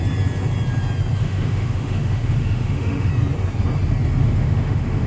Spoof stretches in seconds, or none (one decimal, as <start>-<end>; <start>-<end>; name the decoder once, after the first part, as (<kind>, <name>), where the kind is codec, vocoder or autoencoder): 1.2-3.1 (autoencoder, DAC-VAE); 4.2-5.1